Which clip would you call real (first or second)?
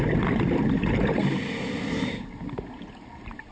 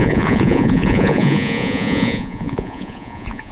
first